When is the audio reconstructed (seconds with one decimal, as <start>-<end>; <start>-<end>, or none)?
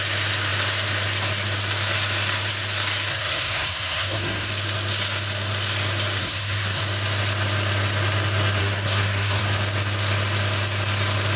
3.1-4.5; 6.2-6.8; 8.6-9.4